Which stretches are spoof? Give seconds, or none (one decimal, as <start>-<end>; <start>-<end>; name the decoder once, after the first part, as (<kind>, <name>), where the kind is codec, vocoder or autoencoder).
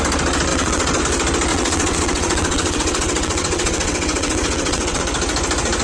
0.5-1.0 (vocoder, WaveNeXt); 1.5-5.0